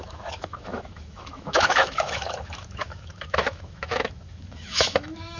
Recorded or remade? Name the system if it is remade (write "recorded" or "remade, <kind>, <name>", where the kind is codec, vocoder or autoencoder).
remade, autoencoder, DAC-VAE